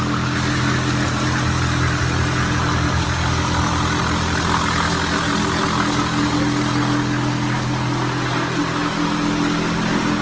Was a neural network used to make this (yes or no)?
no